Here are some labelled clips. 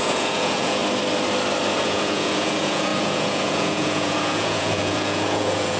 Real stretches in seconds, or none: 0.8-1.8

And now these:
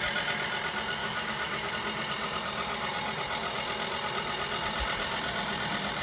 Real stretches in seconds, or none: 0.0-1.0; 1.7-6.0

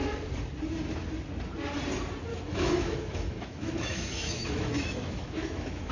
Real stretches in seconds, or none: 0.0-2.3